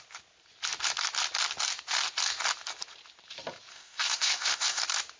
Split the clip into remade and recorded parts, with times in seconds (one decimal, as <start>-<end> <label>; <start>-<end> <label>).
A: 0.0-3.7 recorded; 3.7-4.8 remade; 4.8-5.2 recorded